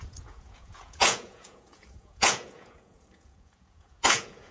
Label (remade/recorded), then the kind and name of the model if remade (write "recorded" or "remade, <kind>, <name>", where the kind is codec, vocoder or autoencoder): remade, vocoder, Vocos